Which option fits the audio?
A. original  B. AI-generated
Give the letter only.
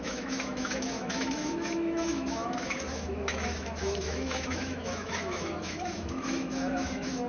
B